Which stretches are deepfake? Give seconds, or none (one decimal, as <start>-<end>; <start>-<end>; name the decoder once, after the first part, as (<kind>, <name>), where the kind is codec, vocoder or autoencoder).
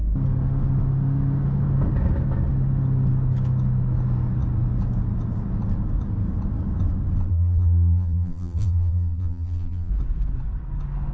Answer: 7.3-9.9 (vocoder, BigVGAN v2)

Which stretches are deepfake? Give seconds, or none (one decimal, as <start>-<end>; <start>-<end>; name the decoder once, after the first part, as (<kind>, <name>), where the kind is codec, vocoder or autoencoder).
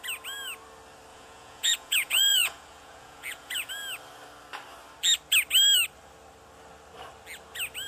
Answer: 1.1-3.7 (vocoder, Vocos)